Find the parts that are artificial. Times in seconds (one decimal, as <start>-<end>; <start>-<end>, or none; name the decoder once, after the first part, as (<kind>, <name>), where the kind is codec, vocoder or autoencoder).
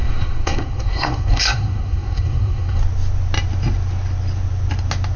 0.0-2.8 (codec, SNAC)